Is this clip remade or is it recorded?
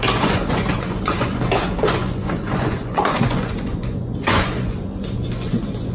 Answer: remade